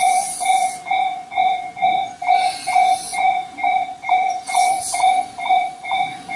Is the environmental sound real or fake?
fake